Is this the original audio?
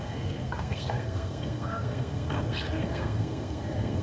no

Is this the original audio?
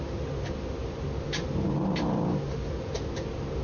yes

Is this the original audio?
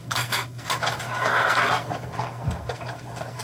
no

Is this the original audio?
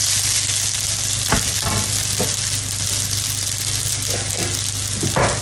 yes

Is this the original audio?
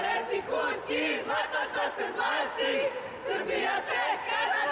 yes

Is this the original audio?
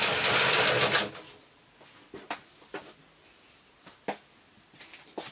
yes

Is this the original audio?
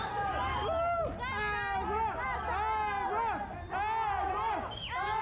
yes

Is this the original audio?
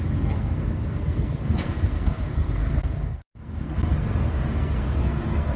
no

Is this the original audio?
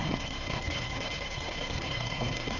no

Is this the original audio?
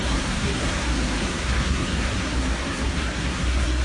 no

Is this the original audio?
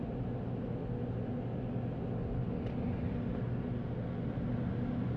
yes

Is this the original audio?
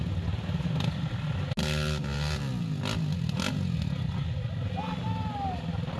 yes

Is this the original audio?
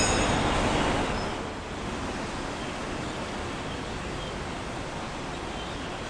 yes